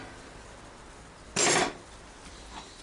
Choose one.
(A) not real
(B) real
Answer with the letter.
B